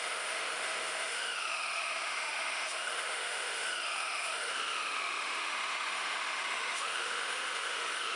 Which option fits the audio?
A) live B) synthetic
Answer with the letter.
B